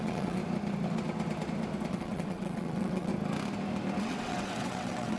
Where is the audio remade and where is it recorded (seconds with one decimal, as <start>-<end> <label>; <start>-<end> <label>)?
0.0-0.4 remade; 0.4-1.9 recorded; 1.9-3.1 remade; 3.1-4.0 recorded; 4.0-5.2 remade

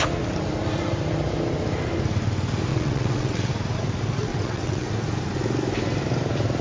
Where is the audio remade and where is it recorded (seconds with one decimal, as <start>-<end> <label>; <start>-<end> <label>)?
0.0-2.7 recorded; 2.7-3.5 remade; 3.5-4.3 recorded; 4.3-4.9 remade; 4.9-6.6 recorded

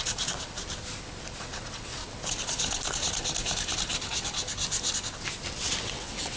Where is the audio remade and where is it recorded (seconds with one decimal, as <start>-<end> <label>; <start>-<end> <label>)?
0.0-0.6 remade; 0.6-1.4 recorded; 1.4-2.0 remade; 2.0-5.8 recorded; 5.8-6.4 remade

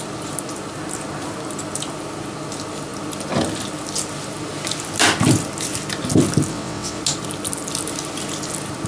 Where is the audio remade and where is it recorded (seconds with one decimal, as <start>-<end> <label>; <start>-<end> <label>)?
0.0-6.5 recorded; 6.5-7.0 remade; 7.0-8.9 recorded

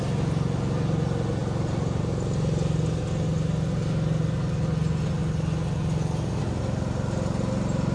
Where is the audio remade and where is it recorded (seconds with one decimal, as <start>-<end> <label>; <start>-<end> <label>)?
0.0-7.9 recorded

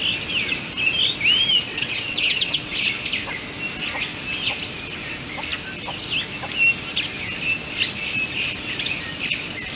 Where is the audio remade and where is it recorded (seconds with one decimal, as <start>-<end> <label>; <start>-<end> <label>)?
0.0-1.7 recorded; 1.7-2.7 remade; 2.7-9.8 recorded